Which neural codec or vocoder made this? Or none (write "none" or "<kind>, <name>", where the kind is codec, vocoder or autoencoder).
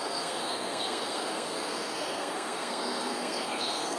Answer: codec, SNAC